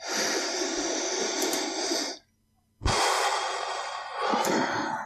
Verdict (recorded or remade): recorded